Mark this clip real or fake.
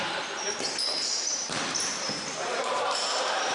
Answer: fake